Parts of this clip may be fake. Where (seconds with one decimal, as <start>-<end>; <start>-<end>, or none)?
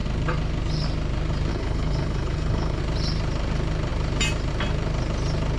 1.5-2.8